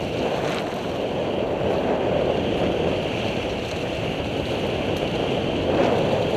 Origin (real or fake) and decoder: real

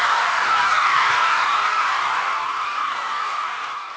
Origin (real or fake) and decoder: fake, codec, DAC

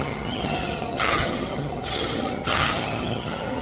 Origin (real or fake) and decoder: fake, vocoder, HiFi-GAN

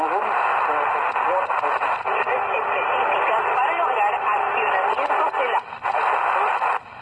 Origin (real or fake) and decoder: real